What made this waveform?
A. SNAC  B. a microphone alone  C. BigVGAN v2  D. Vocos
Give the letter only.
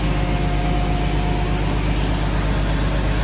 B